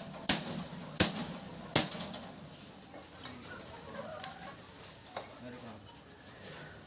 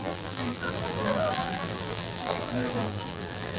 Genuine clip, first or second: first